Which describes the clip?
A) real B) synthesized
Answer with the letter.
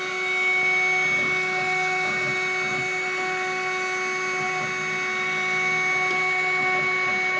A